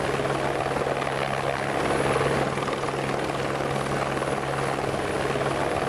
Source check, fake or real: real